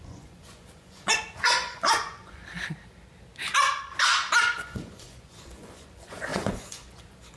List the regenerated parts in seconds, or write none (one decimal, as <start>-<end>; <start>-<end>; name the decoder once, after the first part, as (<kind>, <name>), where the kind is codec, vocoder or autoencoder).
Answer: 0.0-2.4 (vocoder, Vocos); 4.4-7.4